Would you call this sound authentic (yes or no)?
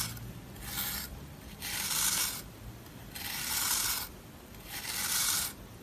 yes